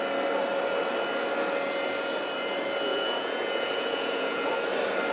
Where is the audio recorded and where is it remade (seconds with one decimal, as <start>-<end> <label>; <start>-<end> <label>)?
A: 0.0-2.9 recorded; 2.9-4.5 remade; 4.5-5.1 recorded